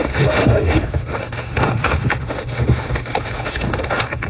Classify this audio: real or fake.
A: fake